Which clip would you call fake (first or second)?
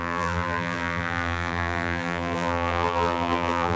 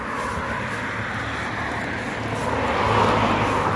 first